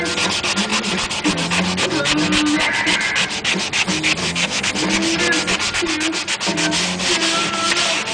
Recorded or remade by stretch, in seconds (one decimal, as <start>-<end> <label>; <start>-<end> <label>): 0.0-4.2 recorded; 4.2-4.7 remade; 4.7-8.1 recorded